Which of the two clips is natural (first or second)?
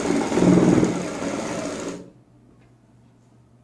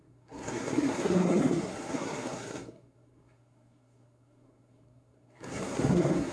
first